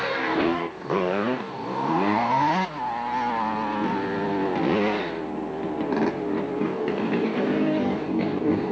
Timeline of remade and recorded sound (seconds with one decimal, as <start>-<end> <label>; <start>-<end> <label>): 0.0-2.5 remade; 2.5-6.6 recorded; 6.6-8.7 remade